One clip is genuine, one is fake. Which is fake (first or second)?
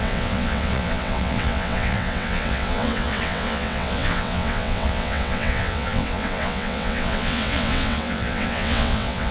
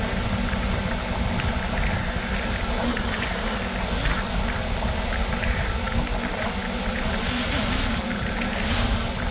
first